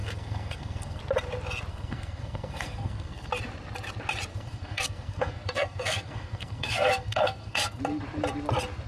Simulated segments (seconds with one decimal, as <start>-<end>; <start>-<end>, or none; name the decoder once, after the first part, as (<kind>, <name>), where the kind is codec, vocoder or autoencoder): 0.0-1.0 (codec, SNAC); 1.7-3.3; 4.3-7.8